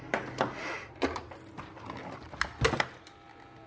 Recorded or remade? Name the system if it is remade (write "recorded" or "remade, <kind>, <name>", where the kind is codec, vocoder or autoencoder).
recorded